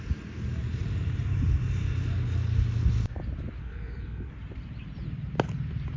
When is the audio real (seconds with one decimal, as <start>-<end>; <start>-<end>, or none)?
0.0-3.6; 4.3-6.0